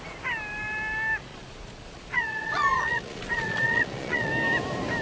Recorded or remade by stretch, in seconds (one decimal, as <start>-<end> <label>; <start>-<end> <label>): 0.0-1.3 recorded; 1.3-4.3 remade; 4.3-5.0 recorded